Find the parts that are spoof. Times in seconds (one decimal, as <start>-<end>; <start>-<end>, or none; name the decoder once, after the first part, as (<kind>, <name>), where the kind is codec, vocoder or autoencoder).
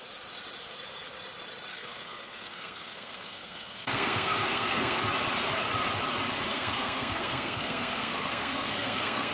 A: 1.7-5.0 (codec, SNAC); 6.5-9.3